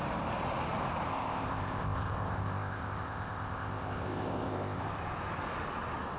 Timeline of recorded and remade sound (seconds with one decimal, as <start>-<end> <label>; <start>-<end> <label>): 0.0-1.1 recorded; 1.1-4.8 remade; 4.8-6.2 recorded